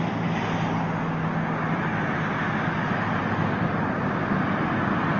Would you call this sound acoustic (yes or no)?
yes